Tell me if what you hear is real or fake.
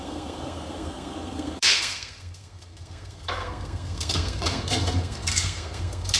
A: fake